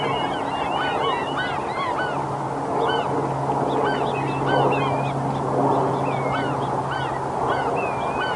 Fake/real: real